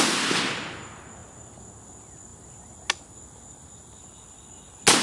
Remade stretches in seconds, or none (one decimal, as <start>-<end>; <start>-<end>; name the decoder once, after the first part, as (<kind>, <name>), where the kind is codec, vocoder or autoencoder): none